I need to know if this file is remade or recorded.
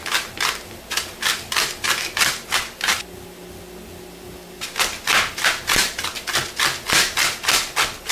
recorded